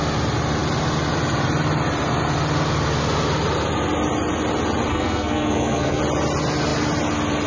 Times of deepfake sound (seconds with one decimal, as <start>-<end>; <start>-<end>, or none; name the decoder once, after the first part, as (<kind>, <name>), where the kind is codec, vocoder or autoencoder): 4.9-6.0 (codec, SNAC)